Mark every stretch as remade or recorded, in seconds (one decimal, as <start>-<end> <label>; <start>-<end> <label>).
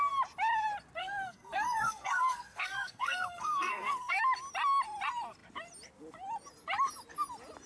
0.0-1.0 recorded; 1.0-4.2 remade; 4.2-7.7 recorded